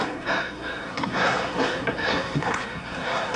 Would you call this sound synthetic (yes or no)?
yes